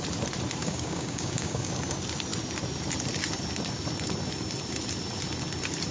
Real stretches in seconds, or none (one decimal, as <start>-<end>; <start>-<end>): 0.0-0.6; 1.7-5.9